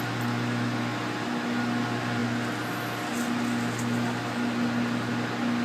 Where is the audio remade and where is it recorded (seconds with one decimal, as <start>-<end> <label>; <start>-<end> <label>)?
0.0-5.6 recorded